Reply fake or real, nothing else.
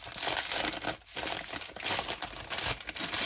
real